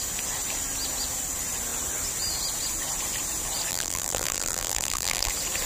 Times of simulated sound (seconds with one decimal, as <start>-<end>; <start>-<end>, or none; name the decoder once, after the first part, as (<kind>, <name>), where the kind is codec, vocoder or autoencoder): 3.7-5.3 (vocoder, BigVGAN v2)